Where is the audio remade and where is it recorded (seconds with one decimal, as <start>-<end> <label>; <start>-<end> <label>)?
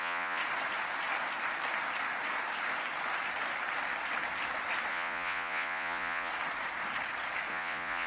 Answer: 0.0-0.4 remade; 0.4-4.9 recorded; 4.9-6.3 remade; 6.3-7.5 recorded; 7.5-8.1 remade